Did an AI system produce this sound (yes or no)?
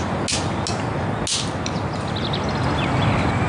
no